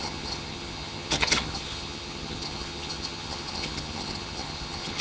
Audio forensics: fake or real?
fake